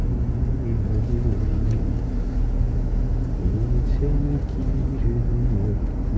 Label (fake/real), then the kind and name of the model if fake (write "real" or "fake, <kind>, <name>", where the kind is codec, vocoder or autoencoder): real